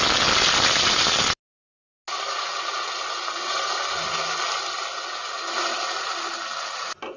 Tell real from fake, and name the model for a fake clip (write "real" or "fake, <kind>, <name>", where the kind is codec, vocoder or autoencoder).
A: real